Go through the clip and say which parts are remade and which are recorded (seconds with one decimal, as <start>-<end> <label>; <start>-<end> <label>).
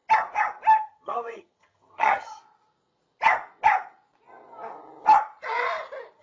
0.0-0.8 recorded; 0.8-2.4 remade; 2.4-6.2 recorded